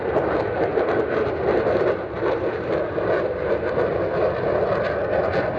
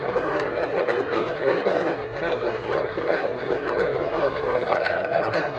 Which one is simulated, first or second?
second